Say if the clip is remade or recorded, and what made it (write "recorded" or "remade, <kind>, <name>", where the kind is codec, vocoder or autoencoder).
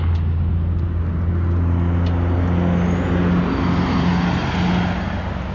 recorded